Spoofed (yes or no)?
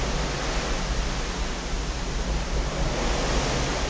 no